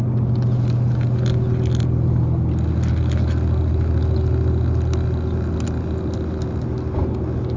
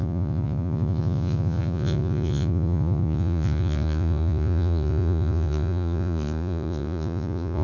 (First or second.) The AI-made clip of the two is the second